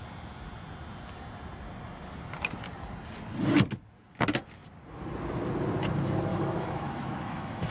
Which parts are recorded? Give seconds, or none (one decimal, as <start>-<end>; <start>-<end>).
0.0-6.3